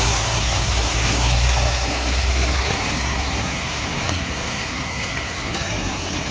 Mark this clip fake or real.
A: fake